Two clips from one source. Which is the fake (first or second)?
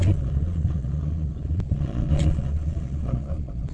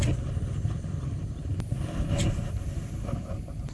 first